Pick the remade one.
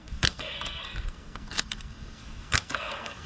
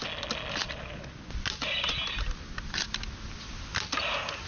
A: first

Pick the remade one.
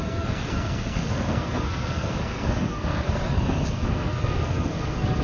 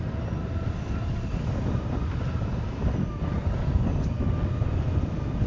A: first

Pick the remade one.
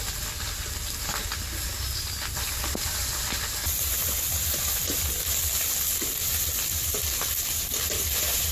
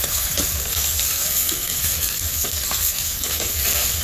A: second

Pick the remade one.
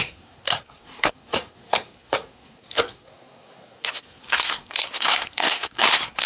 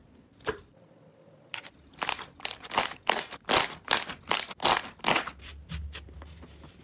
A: first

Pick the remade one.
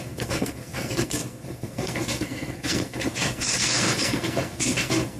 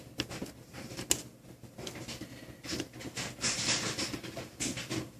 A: first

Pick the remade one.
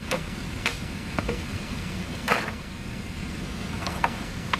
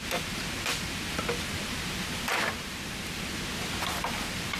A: first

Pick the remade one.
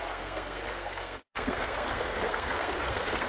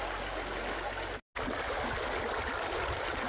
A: first